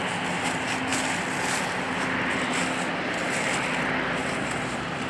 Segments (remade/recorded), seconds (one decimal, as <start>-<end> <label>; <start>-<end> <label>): 0.0-4.2 recorded; 4.2-5.1 remade